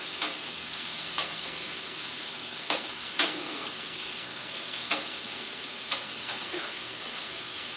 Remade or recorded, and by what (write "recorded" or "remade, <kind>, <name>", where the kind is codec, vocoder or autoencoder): remade, codec, SNAC